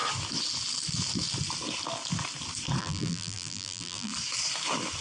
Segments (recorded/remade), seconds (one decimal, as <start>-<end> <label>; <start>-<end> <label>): 0.0-2.8 recorded; 2.8-4.1 remade; 4.1-5.0 recorded